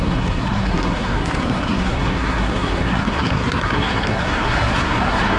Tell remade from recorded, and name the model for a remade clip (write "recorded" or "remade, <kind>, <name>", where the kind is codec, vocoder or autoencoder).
remade, codec, SNAC